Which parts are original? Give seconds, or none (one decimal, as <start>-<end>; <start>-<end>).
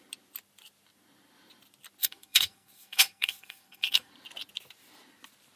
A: 0.0-2.0; 4.1-5.6